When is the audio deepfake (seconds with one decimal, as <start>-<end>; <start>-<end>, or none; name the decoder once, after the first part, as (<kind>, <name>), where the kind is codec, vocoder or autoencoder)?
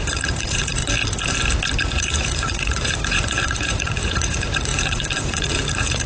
0.0-0.8 (vocoder, Vocos); 1.8-6.1